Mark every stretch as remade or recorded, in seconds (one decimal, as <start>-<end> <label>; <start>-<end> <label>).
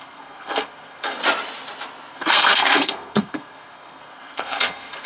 0.0-1.2 remade; 1.2-2.1 recorded; 2.1-5.1 remade